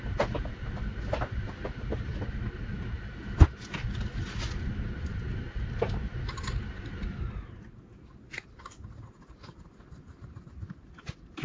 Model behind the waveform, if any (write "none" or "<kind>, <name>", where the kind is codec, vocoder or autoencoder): none